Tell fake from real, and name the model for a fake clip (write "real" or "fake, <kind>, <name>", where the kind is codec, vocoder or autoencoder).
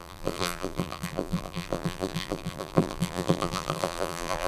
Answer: fake, vocoder, BigVGAN v2